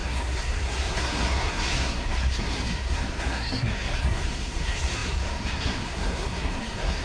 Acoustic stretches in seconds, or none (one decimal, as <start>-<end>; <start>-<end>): none